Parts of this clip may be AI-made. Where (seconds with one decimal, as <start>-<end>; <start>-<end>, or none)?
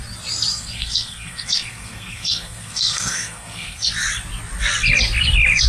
0.5-3.9